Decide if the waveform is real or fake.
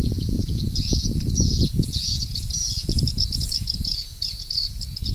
fake